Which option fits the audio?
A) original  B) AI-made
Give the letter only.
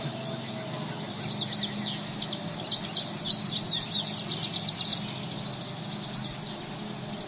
A